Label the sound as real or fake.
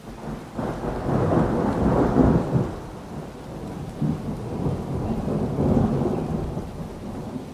real